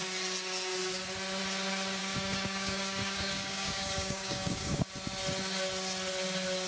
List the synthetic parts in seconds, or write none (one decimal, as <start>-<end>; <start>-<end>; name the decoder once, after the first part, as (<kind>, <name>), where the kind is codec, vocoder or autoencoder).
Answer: 2.0-4.9 (codec, DAC)